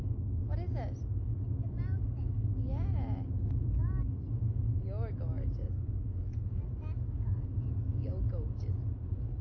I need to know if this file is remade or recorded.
recorded